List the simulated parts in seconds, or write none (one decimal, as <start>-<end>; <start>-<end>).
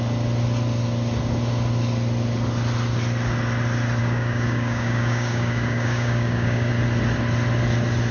4.0-6.7